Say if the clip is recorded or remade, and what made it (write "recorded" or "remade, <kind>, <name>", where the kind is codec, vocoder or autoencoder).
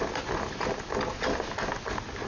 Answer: recorded